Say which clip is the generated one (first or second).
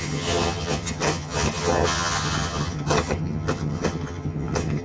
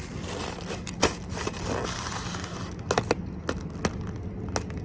first